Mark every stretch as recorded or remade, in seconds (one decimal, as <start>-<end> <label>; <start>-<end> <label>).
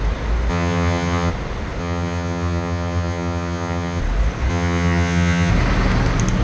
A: 0.0-0.5 recorded; 0.5-1.3 remade; 1.3-1.8 recorded; 1.8-4.0 remade; 4.0-4.5 recorded; 4.5-5.5 remade; 5.5-6.4 recorded